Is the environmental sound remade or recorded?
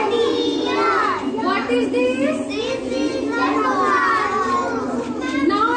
recorded